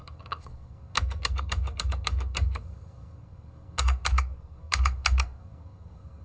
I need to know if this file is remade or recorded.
remade